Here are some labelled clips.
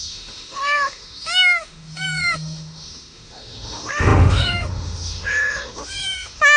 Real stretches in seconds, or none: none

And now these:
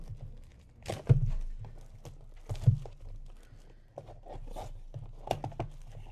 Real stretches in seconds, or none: 0.0-6.1

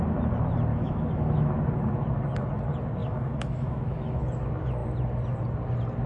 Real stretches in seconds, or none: 0.0-0.7; 1.5-3.0; 4.2-6.1

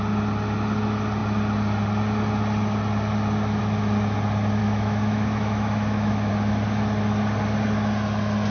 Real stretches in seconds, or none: 0.0-4.6; 6.3-8.5

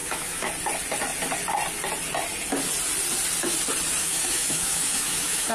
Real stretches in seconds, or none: 0.5-4.0

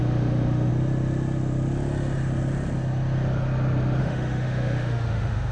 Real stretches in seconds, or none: 0.7-4.0

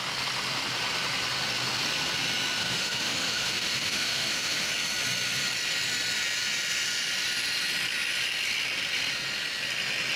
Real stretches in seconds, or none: 0.0-2.6; 4.7-10.2